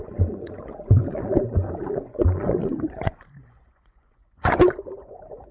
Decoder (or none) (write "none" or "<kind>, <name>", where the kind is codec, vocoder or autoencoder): vocoder, Vocos